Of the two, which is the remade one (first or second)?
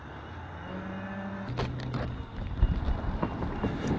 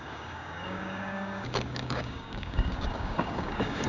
second